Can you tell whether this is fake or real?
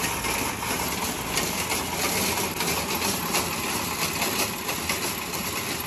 real